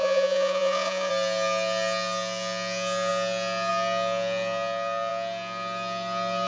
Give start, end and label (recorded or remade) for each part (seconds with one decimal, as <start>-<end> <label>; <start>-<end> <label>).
0.0-1.1 remade; 1.1-6.5 recorded